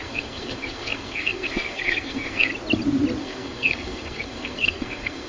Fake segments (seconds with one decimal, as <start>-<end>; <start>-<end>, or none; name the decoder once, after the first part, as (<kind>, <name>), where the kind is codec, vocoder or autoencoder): 0.0-2.5 (codec, SNAC); 3.2-5.3